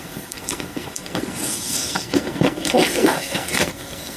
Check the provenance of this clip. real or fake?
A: fake